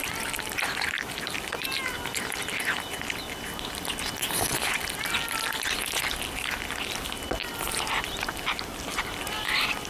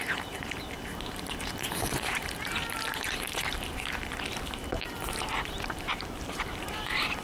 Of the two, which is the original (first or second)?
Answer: first